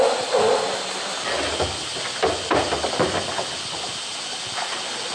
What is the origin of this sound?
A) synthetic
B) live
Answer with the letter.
B